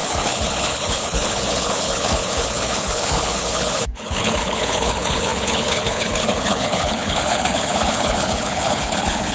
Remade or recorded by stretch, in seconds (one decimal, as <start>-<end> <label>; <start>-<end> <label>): 0.0-9.3 remade